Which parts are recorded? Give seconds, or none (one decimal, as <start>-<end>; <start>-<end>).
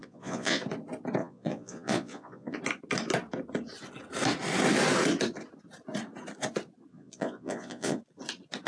0.6-1.2; 2.6-6.9; 8.0-8.7